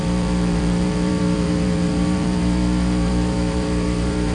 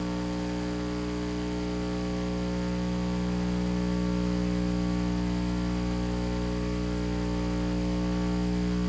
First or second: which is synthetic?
first